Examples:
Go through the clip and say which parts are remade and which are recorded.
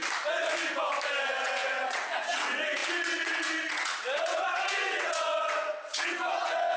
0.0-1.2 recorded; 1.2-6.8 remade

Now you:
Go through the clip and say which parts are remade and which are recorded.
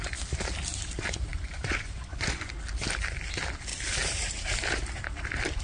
0.0-1.3 recorded; 1.3-2.5 remade; 2.5-5.6 recorded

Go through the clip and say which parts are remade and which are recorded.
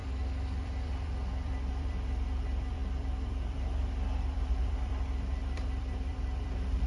0.0-6.9 remade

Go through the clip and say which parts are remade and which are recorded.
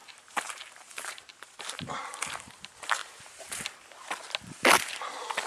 0.0-2.5 remade; 2.5-3.0 recorded; 3.0-3.6 remade; 3.6-5.5 recorded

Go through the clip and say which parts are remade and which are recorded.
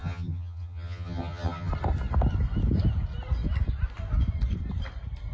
0.0-1.7 remade; 1.7-5.3 recorded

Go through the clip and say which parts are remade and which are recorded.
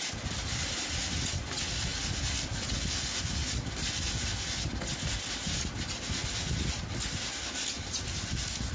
0.0-8.7 recorded